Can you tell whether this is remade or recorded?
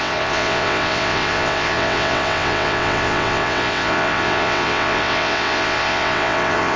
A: remade